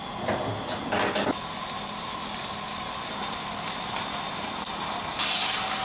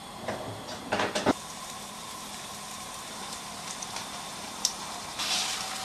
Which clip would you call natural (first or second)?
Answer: first